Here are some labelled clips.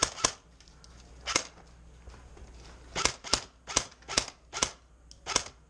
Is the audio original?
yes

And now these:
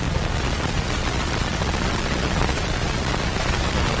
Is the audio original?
no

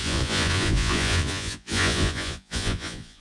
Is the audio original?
no